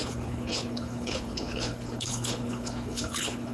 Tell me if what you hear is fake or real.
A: fake